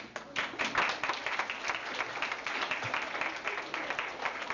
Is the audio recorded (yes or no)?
yes